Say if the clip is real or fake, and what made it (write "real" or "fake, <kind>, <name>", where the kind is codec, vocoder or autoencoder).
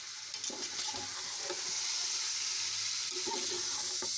real